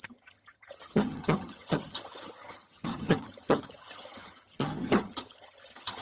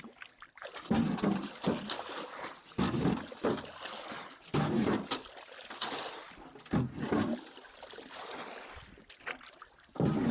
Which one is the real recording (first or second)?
second